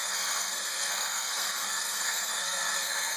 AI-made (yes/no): yes